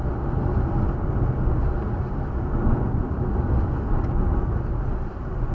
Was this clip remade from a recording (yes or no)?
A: no